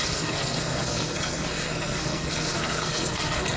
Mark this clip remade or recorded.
remade